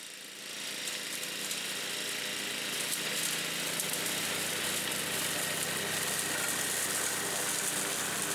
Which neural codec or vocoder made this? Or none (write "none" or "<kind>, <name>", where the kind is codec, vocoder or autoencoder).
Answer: none